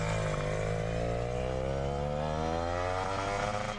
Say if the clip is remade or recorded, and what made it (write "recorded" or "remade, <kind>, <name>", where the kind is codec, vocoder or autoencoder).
recorded